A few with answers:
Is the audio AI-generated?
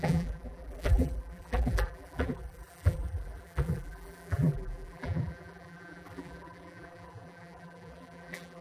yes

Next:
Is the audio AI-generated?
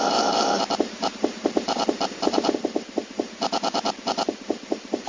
yes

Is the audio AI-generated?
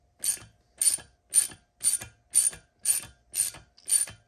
no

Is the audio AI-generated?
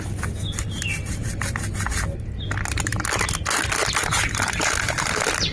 no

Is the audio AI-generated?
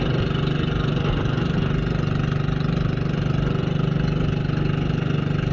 no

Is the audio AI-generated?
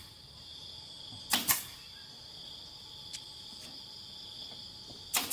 no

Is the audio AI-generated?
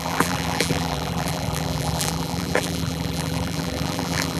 yes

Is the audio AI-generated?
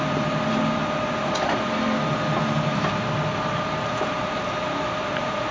yes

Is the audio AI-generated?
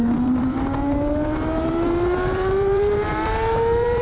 yes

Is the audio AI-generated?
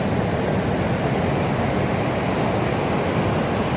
no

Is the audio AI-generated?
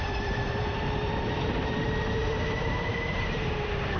yes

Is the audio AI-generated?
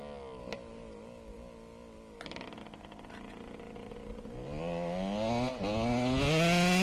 no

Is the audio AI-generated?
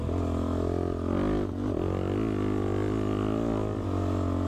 no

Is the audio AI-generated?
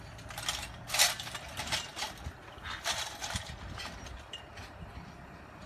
no